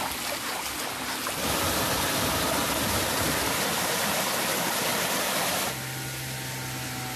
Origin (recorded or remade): recorded